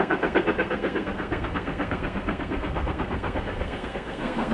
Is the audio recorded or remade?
remade